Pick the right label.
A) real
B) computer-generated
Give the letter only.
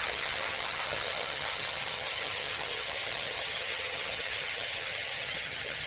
B